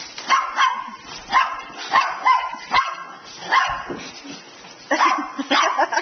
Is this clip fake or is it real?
real